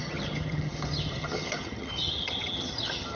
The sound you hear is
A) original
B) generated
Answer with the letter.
B